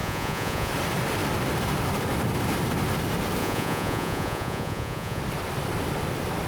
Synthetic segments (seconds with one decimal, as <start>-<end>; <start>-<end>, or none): 0.0-0.7; 3.4-5.2